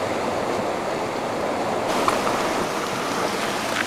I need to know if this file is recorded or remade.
recorded